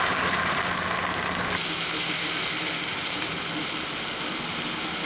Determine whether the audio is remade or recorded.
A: recorded